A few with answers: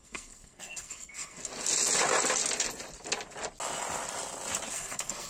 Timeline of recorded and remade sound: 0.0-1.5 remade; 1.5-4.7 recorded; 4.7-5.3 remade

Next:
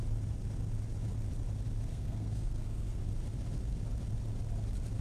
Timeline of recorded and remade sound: 0.0-1.9 recorded; 1.9-3.0 remade; 3.0-5.0 recorded

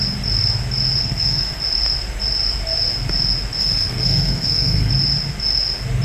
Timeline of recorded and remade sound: 0.0-1.0 recorded; 1.0-1.6 remade; 1.6-3.6 recorded; 3.6-4.9 remade; 4.9-6.0 recorded

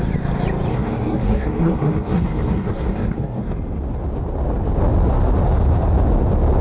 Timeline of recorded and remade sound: 0.0-0.7 recorded; 0.7-3.4 remade; 3.4-6.6 recorded

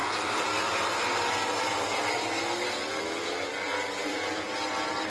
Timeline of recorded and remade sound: 0.0-5.1 recorded